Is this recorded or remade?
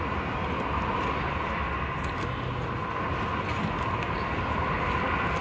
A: recorded